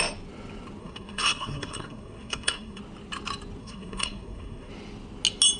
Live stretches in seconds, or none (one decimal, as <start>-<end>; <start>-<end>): 0.0-0.8; 2.8-3.6; 4.7-5.6